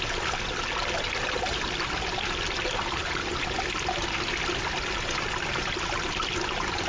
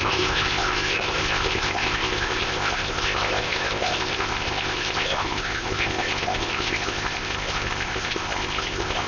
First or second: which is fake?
second